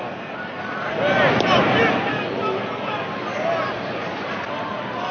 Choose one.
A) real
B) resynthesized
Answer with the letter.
A